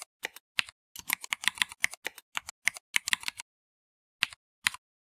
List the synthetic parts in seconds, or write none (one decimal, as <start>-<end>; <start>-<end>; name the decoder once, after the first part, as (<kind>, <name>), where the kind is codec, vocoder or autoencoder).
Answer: none